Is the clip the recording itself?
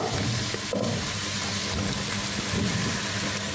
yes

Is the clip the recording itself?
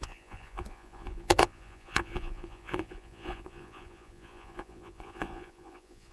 no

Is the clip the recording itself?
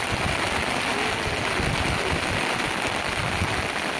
yes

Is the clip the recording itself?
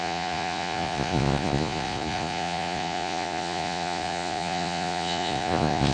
no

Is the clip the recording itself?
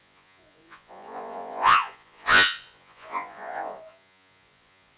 no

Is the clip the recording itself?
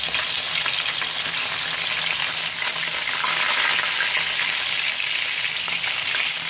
yes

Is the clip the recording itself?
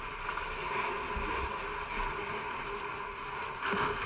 yes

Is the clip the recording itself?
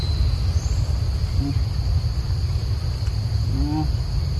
yes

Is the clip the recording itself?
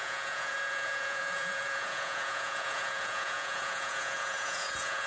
no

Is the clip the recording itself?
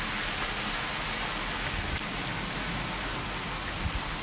yes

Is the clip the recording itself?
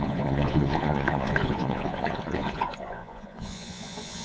no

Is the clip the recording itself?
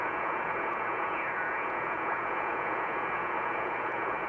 no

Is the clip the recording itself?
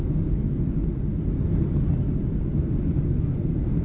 yes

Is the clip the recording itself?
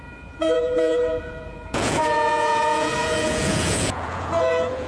no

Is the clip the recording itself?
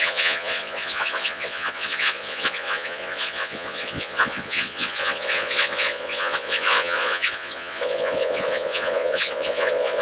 no